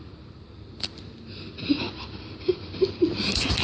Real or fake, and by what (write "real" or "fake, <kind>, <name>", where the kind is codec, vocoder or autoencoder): real